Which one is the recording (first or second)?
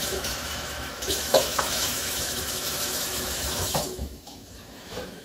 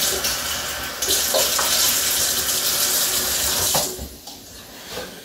second